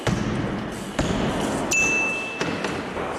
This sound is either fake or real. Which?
real